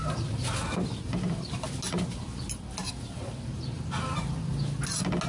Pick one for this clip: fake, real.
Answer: real